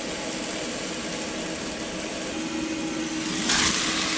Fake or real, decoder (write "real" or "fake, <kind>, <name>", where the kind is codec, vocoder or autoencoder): real